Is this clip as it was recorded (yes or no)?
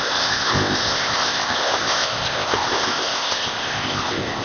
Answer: no